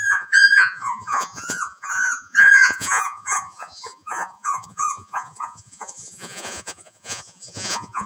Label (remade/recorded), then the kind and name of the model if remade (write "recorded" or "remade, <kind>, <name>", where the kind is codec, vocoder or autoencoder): remade, vocoder, Vocos